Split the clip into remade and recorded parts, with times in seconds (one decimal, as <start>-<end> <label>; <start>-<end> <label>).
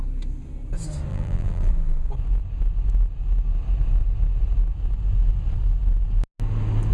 0.0-1.1 recorded; 1.1-1.7 remade; 1.7-6.9 recorded